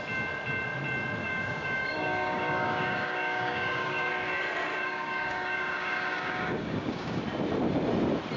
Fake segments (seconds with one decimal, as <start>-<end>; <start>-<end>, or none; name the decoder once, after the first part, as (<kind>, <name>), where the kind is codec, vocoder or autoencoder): 1.2-4.1 (codec, DAC); 4.7-7.2